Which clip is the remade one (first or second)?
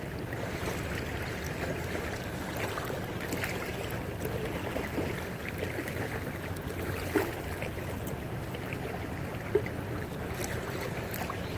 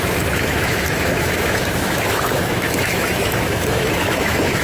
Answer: second